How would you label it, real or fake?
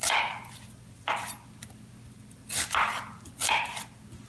real